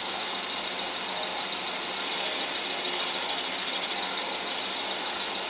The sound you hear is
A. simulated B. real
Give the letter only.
B